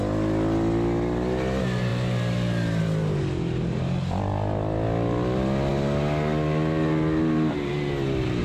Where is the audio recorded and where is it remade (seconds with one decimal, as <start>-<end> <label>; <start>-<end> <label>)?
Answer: 0.0-8.4 recorded